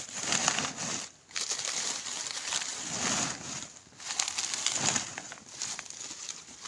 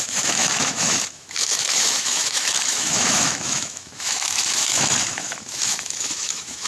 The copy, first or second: second